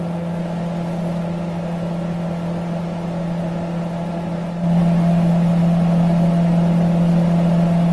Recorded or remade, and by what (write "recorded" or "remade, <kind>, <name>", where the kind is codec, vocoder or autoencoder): recorded